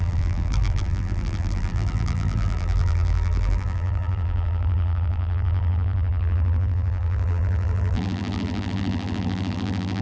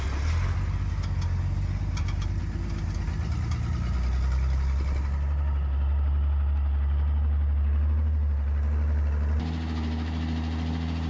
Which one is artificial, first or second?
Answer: first